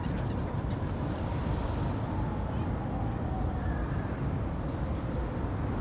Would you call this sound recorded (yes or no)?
yes